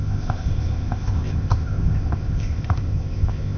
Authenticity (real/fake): fake